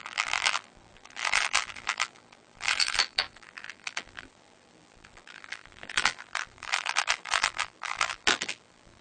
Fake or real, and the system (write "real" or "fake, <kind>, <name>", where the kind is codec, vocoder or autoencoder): fake, vocoder, BigVGAN v2